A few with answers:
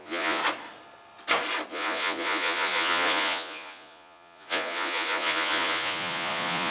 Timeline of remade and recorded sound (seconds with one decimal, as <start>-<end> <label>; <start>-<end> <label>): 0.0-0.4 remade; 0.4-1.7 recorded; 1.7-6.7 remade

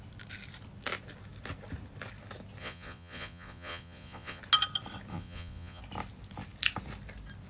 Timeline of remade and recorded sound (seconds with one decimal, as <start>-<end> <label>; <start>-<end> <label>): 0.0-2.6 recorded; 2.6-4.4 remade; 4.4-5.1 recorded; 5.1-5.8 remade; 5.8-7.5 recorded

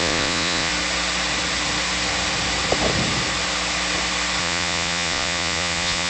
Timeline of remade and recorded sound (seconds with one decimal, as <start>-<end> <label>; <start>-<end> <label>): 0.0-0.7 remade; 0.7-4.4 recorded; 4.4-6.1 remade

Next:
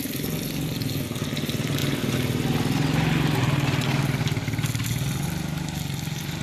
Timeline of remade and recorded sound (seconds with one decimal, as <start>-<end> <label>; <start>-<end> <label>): 0.0-6.4 recorded